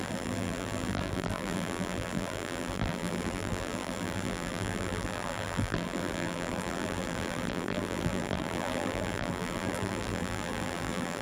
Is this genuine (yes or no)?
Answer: no